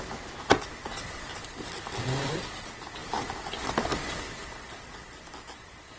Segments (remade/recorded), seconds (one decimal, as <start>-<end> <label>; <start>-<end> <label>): 0.0-3.0 recorded; 3.0-3.5 remade; 3.5-6.0 recorded